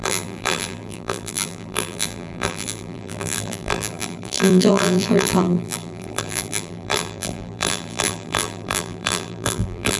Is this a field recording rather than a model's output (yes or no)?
no